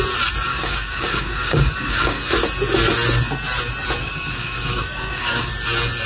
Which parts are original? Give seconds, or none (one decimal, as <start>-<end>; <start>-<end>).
0.0-0.5; 2.2-4.0; 5.5-6.1